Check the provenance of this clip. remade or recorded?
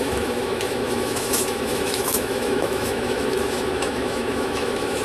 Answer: remade